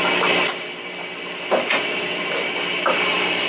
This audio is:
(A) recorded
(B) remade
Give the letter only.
A